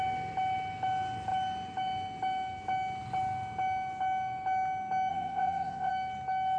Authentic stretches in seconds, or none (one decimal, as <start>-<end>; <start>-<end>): 0.0-5.1; 5.9-6.6